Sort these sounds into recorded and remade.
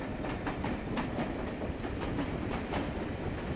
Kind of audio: remade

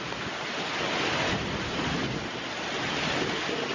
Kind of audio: recorded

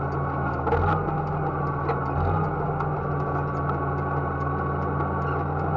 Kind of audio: recorded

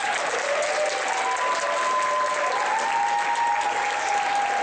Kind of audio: recorded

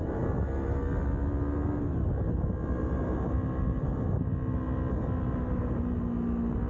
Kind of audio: recorded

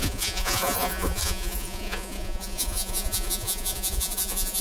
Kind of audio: remade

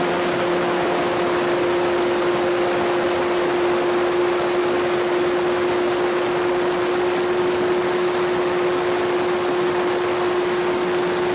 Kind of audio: recorded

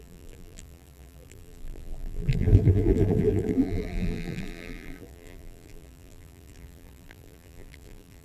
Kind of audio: remade